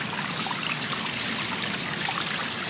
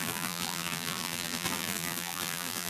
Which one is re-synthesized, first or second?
second